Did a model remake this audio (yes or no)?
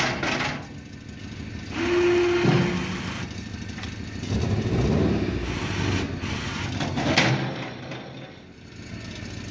no